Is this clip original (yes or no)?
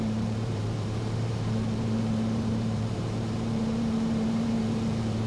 no